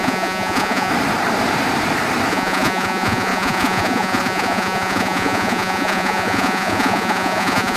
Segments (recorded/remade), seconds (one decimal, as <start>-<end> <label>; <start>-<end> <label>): 0.0-0.9 remade; 0.9-2.3 recorded; 2.3-7.8 remade